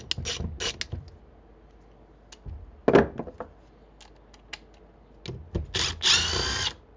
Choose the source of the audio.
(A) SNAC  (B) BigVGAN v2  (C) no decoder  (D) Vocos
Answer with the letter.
C